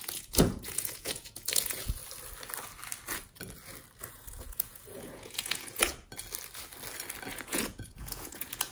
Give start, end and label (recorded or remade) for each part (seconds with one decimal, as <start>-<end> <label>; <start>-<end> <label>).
0.0-2.0 remade; 2.0-4.1 recorded; 4.1-5.9 remade; 5.9-7.3 recorded; 7.3-8.7 remade

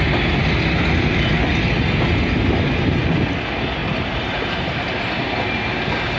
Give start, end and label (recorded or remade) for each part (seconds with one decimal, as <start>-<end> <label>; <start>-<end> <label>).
0.0-3.8 recorded; 3.8-4.9 remade; 4.9-6.2 recorded

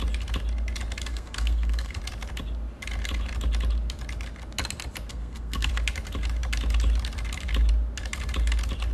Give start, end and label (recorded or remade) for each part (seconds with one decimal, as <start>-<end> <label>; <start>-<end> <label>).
0.0-1.1 recorded; 1.1-2.0 remade; 2.0-5.1 recorded; 5.1-5.7 remade; 5.7-8.9 recorded

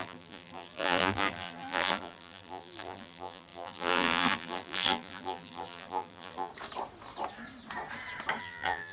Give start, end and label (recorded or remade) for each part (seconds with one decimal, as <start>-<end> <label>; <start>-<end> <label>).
0.0-6.5 remade; 6.5-8.4 recorded; 8.4-8.9 remade

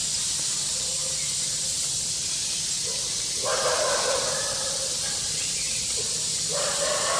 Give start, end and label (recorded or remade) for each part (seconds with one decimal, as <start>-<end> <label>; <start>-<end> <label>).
0.0-4.3 recorded; 4.3-7.2 remade

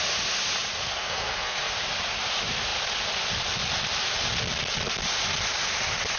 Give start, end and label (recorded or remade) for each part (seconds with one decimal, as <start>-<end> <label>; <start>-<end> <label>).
0.0-0.8 recorded; 0.8-1.7 remade; 1.7-6.2 recorded

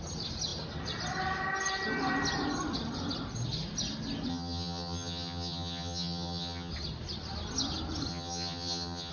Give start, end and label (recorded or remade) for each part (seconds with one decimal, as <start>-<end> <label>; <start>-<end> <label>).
0.0-4.3 recorded; 4.3-6.7 remade; 6.7-8.1 recorded; 8.1-9.1 remade

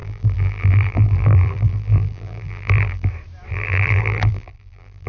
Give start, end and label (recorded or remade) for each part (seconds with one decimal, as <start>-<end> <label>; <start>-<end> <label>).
0.0-3.1 remade; 3.1-3.5 recorded; 3.5-5.1 remade